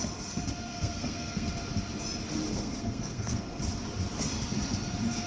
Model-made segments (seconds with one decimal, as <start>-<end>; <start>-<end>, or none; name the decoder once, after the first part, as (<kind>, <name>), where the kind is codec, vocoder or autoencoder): 0.7-1.5 (codec, SNAC); 2.5-3.6